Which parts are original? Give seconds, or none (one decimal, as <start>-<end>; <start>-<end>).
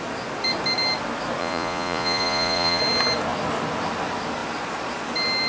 0.0-1.4; 2.8-5.5